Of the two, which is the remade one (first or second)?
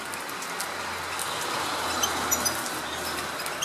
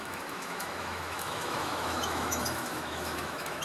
second